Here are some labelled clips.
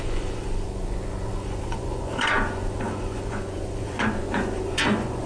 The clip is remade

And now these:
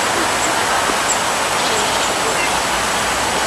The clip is recorded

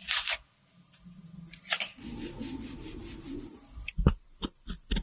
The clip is recorded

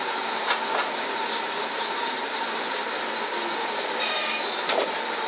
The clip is recorded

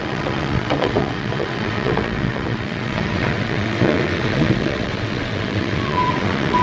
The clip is remade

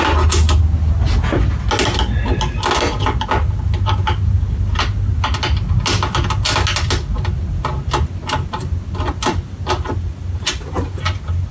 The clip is recorded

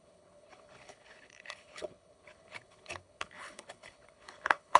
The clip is remade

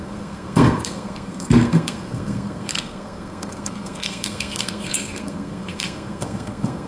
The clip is remade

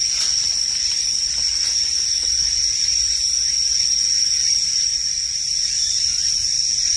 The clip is recorded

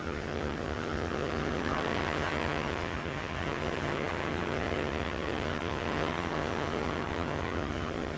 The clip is remade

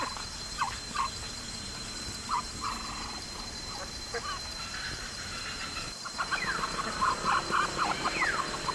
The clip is recorded